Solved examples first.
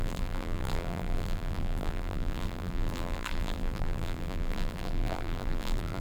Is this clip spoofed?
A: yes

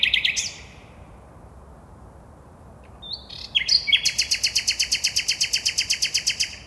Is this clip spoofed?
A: no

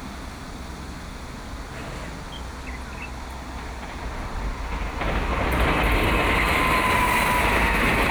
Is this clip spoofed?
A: no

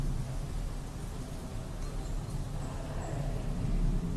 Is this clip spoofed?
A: no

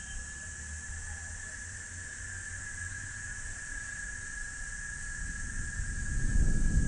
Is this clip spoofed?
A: yes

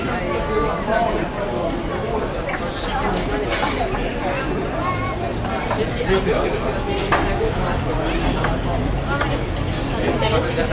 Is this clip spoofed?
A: no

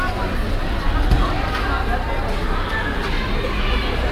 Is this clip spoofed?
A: no